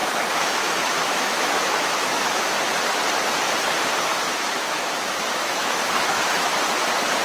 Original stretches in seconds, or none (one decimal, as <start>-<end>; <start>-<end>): 2.4-4.1; 6.6-7.2